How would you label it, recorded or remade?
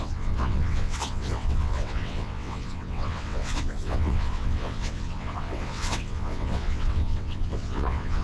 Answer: remade